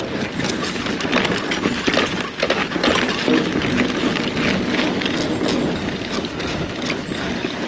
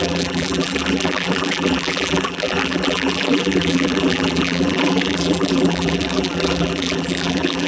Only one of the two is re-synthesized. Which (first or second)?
second